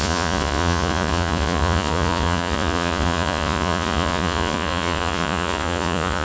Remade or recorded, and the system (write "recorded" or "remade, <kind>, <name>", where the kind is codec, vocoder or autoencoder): remade, vocoder, Vocos